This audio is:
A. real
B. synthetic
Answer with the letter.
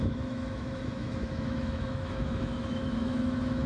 B